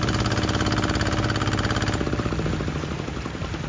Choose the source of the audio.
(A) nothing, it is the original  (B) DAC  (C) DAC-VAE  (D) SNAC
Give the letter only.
A